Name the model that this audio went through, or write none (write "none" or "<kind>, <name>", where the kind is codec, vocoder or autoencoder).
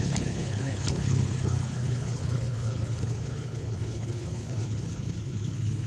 codec, HILCodec